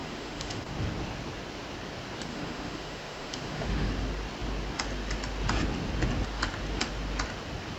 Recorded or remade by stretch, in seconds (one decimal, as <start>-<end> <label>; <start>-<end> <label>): 0.0-0.7 remade; 0.7-2.3 recorded; 2.3-3.9 remade; 3.9-7.8 recorded

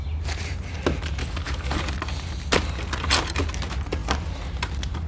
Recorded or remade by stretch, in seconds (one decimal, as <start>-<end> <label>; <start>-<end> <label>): 0.0-1.2 recorded; 1.2-1.8 remade; 1.8-5.1 recorded

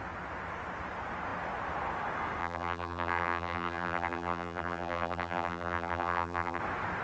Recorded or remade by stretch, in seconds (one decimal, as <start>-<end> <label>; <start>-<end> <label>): 0.0-2.4 recorded; 2.4-6.6 remade; 6.6-7.0 recorded

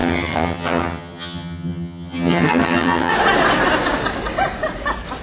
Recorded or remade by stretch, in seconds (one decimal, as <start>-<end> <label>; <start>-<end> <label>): 0.0-3.1 remade; 3.1-5.2 recorded